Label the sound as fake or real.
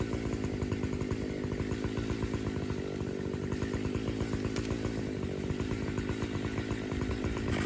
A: real